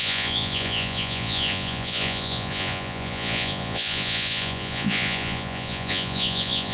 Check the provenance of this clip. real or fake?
fake